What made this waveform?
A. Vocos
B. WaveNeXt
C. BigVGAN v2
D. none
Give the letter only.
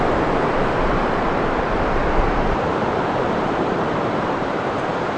C